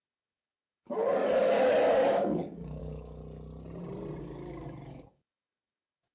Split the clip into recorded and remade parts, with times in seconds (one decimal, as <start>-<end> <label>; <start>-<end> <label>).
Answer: 0.0-3.2 remade; 3.2-4.2 recorded; 4.2-6.1 remade